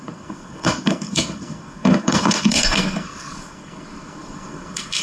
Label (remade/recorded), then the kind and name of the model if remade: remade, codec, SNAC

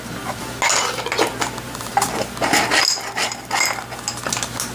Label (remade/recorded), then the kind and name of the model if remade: recorded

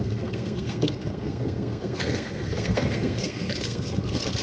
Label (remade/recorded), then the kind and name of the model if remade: remade, codec, SNAC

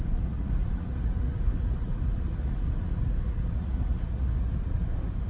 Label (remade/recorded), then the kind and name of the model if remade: remade, vocoder, Vocos